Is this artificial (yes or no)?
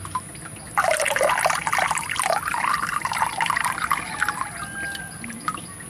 no